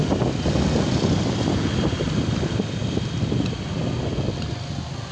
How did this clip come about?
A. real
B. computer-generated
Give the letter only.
A